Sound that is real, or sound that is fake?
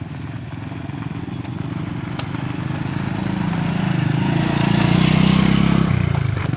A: real